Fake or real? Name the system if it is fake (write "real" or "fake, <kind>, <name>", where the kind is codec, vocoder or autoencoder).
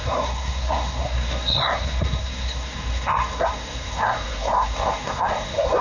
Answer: fake, codec, SNAC